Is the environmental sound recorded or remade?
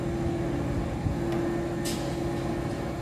recorded